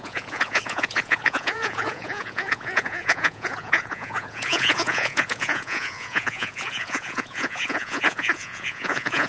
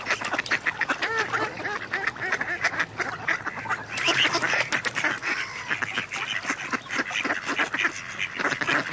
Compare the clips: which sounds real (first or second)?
second